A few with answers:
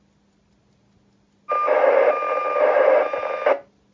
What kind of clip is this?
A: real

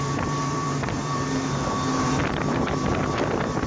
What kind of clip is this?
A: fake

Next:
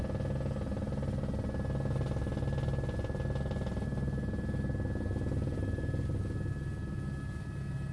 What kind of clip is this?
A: real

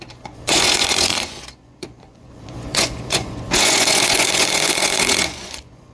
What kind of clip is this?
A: fake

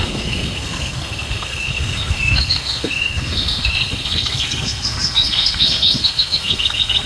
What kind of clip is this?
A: fake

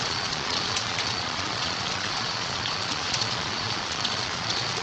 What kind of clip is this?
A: fake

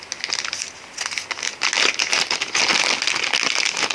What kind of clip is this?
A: real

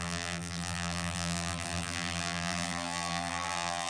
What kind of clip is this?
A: fake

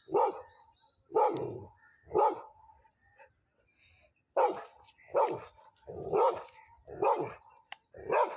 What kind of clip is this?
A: real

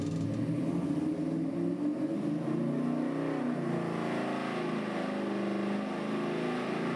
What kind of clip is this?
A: real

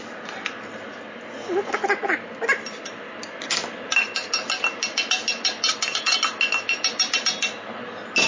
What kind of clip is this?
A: real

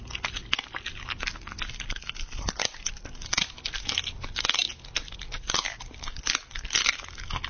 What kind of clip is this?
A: real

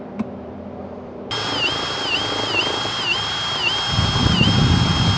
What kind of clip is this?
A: fake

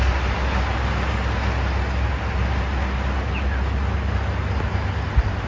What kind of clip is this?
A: real